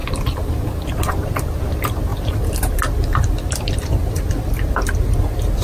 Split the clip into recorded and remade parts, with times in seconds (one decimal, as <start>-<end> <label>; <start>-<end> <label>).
0.0-2.1 recorded; 2.1-4.9 remade; 4.9-5.6 recorded